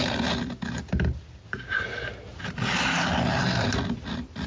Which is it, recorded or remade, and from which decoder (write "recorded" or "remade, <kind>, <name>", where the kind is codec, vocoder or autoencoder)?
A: recorded